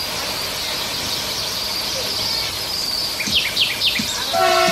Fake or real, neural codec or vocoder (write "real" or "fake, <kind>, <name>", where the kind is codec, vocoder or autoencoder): fake, vocoder, BigVGAN v2